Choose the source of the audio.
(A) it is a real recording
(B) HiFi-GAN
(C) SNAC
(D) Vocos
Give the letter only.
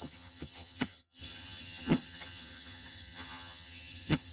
B